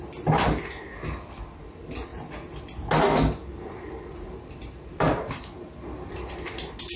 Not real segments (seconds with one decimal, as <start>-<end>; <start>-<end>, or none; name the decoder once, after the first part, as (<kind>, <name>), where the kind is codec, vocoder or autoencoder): 3.4-5.5 (vocoder, BigVGAN v2)